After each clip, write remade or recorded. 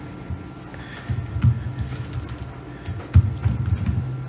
recorded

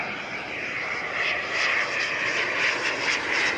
recorded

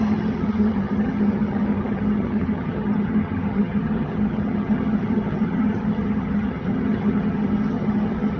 remade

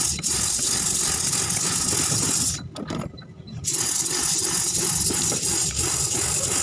recorded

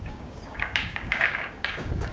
remade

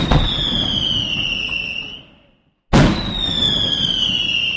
recorded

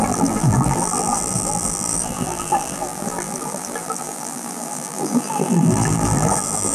remade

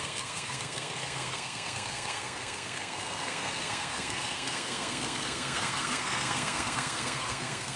remade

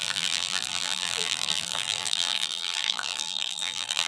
remade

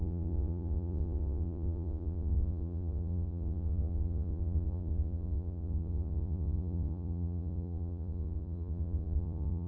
remade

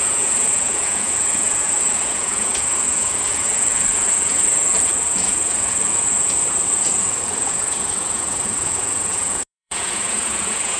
remade